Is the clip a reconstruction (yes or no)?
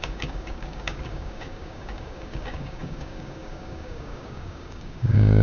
yes